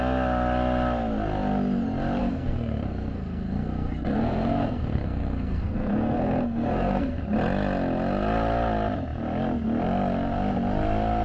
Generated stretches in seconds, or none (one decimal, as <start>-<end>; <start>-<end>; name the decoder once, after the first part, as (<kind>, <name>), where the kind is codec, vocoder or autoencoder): 2.2-7.2 (codec, SNAC)